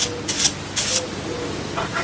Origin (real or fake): real